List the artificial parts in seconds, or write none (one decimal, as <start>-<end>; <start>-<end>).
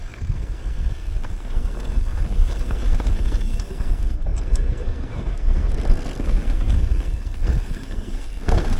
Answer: 0.0-8.8